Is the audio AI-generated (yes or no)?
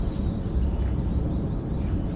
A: no